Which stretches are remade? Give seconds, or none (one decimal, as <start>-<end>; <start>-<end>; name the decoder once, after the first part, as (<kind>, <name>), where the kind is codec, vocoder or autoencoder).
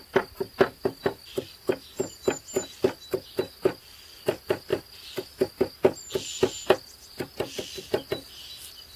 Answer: none